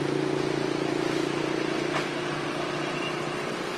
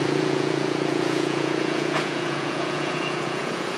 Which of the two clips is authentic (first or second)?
first